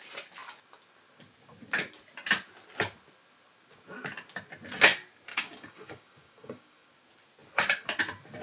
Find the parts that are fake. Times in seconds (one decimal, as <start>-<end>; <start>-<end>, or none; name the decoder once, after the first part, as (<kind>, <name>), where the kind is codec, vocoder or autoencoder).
5.3-6.9 (codec, DAC)